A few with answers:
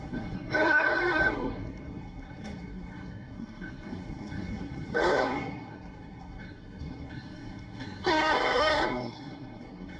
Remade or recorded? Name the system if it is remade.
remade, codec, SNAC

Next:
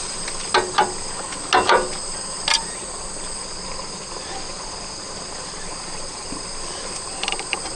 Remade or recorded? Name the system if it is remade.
recorded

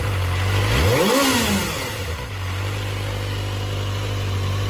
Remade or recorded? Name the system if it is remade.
recorded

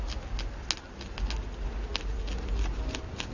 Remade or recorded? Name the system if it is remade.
recorded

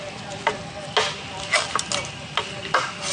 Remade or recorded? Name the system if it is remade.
recorded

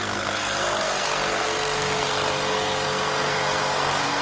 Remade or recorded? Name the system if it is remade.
remade, codec, SNAC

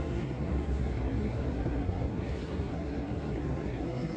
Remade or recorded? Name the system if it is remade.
remade, codec, SNAC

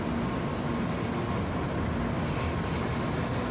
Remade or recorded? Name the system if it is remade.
recorded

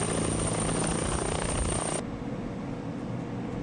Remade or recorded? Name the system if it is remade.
recorded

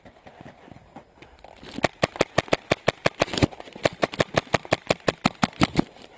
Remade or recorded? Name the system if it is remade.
remade, vocoder, BigVGAN v2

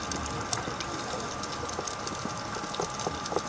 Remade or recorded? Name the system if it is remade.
recorded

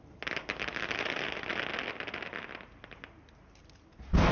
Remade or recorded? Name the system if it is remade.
recorded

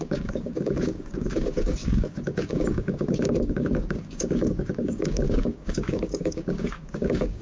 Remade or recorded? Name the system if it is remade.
remade, codec, DAC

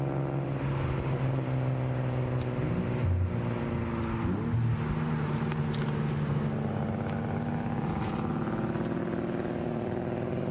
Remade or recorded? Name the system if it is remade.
recorded